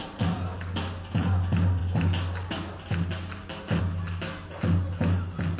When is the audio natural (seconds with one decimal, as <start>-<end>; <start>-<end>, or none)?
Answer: 0.0-5.6